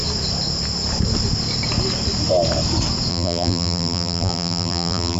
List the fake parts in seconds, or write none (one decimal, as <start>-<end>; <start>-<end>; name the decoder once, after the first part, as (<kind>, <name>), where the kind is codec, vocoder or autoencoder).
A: 3.1-5.2 (vocoder, BigVGAN v2)